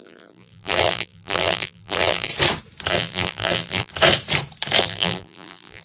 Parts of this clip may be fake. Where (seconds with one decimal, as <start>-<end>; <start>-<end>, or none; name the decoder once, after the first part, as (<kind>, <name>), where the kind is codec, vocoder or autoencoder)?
0.0-2.3 (vocoder, BigVGAN v2); 2.9-3.9; 4.8-5.8